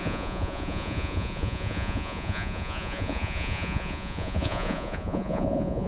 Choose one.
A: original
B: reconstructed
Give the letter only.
B